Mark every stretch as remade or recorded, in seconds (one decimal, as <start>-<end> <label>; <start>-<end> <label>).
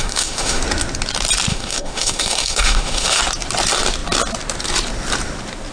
0.0-0.6 remade; 0.6-1.5 recorded; 1.5-3.2 remade; 3.2-5.7 recorded